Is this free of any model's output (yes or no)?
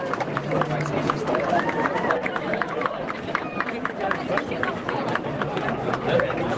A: yes